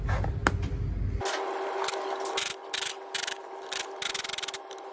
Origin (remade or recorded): recorded